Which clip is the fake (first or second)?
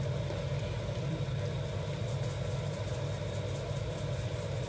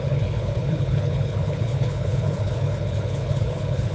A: second